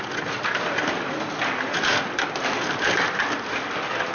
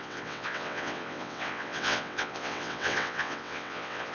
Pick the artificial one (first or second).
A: second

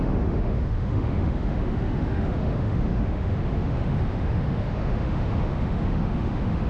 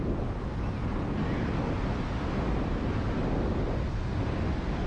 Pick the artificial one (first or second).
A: first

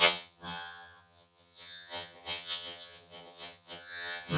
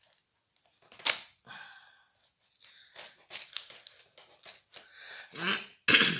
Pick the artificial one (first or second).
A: first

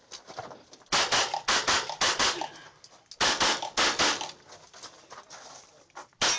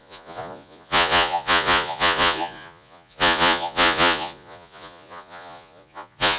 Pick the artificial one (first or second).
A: second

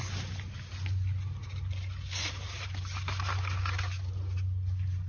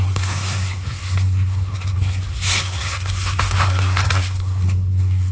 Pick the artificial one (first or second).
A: second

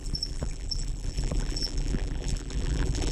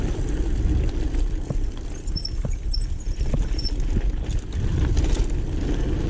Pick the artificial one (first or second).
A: first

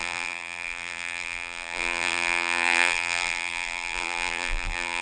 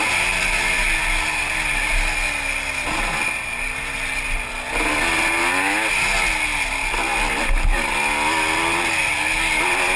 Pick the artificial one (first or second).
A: first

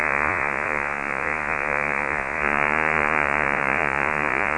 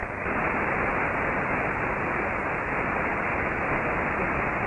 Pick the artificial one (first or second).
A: first